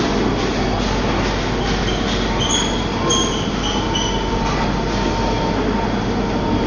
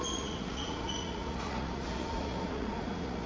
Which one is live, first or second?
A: first